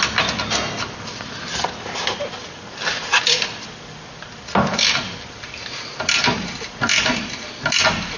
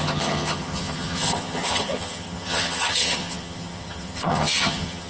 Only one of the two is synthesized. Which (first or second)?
second